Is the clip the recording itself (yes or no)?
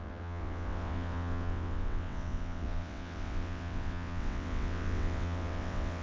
no